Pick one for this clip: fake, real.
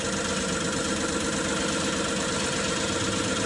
real